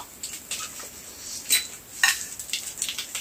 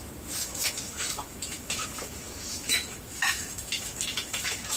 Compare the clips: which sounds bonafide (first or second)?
first